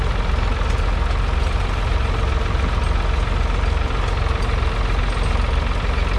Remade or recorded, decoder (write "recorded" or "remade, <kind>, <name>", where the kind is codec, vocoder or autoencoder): recorded